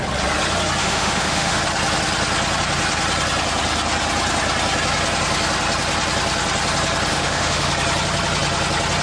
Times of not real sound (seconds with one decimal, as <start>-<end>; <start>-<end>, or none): 0.8-1.6; 7.1-7.7